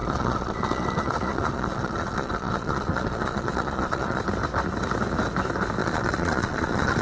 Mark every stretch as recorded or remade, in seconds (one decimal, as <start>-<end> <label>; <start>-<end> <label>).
0.0-4.2 remade; 4.2-5.8 recorded; 5.8-7.0 remade